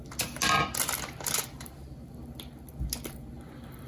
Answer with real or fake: real